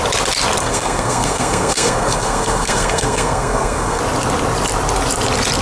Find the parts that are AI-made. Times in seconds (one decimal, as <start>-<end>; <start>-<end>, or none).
0.6-4.0